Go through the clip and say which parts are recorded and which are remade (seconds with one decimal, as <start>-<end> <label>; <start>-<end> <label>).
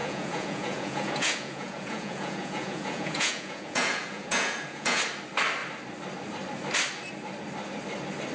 0.0-5.0 remade; 5.0-8.3 recorded